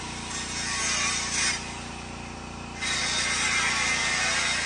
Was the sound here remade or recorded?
remade